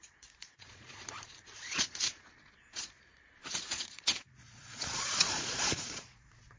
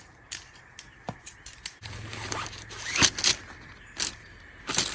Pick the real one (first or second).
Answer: second